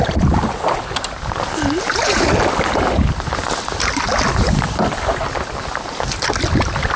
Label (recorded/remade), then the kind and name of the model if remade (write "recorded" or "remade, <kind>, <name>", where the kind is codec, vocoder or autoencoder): recorded